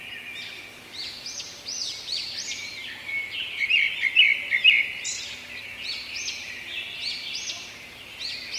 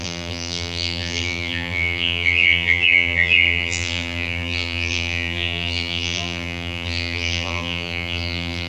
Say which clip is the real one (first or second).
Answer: first